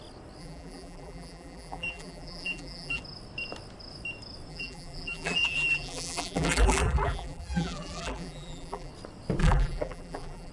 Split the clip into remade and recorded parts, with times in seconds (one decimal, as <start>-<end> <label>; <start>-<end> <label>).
0.0-0.4 recorded; 0.4-3.0 remade; 3.0-4.5 recorded; 4.5-8.9 remade; 8.9-9.4 recorded; 9.4-10.5 remade